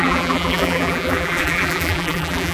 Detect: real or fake fake